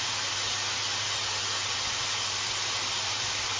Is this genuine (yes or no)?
yes